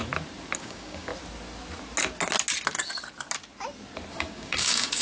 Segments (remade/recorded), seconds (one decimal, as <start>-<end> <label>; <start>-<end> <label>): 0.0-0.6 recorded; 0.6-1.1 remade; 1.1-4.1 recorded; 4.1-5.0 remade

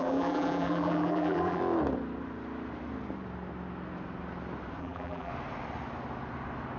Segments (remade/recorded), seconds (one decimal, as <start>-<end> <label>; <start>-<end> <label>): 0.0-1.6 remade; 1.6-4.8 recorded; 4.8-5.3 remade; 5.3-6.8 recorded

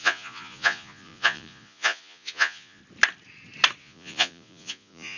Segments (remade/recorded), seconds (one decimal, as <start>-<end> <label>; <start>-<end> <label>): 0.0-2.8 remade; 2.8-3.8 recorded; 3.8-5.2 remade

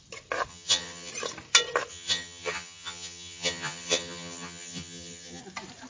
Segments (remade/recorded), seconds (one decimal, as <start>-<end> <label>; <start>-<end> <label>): 0.0-0.5 recorded; 0.5-1.1 remade; 1.1-1.9 recorded; 1.9-5.4 remade; 5.4-5.9 recorded

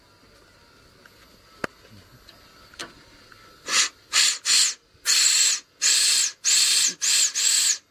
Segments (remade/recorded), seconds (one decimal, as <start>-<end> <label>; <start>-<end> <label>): 0.0-7.9 recorded

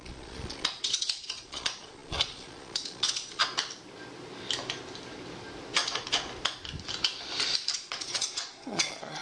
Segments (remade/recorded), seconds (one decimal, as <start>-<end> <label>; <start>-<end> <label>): 0.0-3.4 remade; 3.4-7.7 recorded; 7.7-9.2 remade

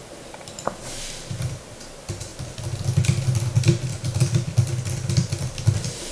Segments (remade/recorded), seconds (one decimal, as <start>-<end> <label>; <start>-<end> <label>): 0.0-6.1 recorded

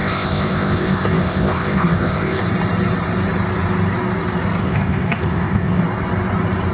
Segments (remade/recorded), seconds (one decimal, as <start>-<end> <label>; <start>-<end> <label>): 0.0-2.4 remade; 2.4-4.6 recorded; 4.6-5.8 remade; 5.8-6.7 recorded